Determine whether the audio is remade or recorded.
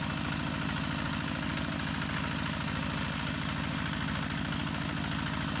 recorded